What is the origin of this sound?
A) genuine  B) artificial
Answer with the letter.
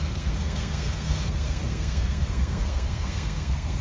B